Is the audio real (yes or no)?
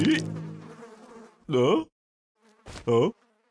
yes